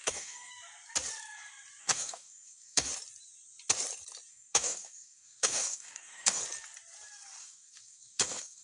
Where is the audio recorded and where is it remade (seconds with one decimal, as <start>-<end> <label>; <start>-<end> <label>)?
0.0-0.5 remade; 0.5-1.8 recorded; 1.8-2.9 remade; 2.9-4.3 recorded; 4.3-6.4 remade; 6.4-7.4 recorded; 7.4-8.6 remade